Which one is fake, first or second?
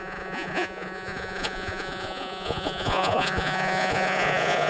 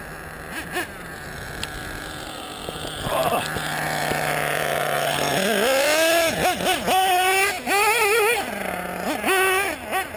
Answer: first